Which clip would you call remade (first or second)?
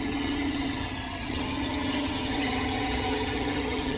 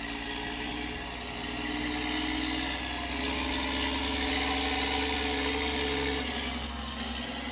first